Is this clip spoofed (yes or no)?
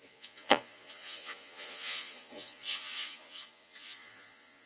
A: yes